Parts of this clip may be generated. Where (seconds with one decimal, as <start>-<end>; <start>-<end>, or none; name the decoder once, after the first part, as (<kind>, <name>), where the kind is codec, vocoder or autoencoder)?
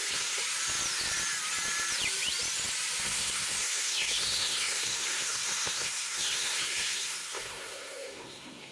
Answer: 0.0-0.4 (codec, SNAC); 3.0-8.7